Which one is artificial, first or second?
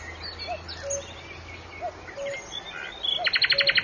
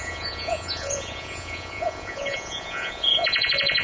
second